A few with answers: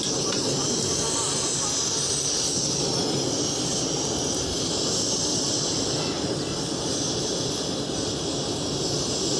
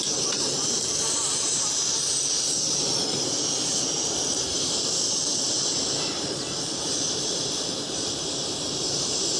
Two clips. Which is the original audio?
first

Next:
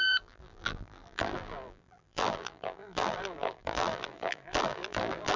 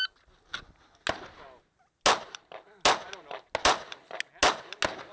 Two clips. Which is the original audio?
second